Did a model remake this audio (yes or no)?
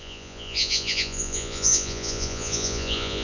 yes